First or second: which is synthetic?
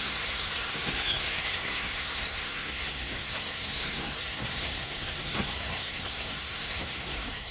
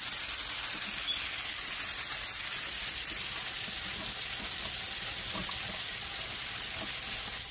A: first